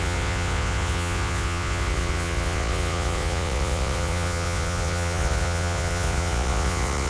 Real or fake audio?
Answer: fake